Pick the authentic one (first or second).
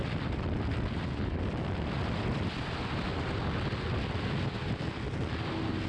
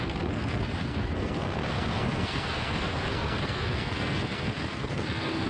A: first